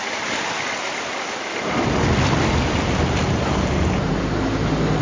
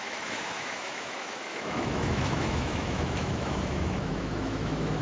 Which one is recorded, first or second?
first